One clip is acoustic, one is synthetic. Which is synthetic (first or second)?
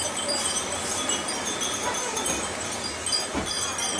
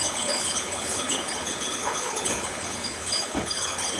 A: second